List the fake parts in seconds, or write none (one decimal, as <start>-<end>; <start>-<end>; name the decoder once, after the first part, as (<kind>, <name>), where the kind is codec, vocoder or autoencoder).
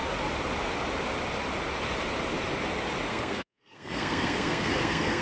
3.1-5.2 (codec, SNAC)